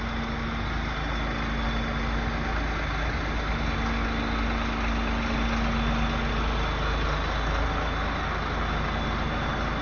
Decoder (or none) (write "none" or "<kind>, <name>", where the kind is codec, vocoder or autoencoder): none